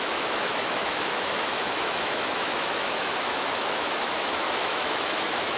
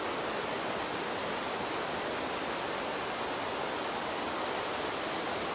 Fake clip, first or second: first